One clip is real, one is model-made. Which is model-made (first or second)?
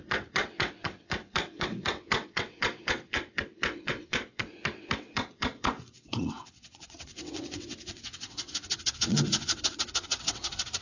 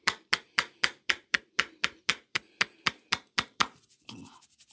first